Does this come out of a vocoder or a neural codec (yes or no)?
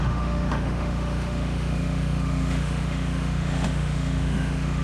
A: yes